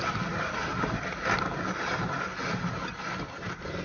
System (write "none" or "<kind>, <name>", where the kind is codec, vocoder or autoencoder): none